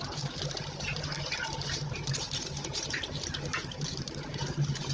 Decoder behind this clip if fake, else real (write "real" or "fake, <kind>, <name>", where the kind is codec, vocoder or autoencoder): fake, vocoder, BigVGAN v2